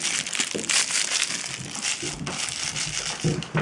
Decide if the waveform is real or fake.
real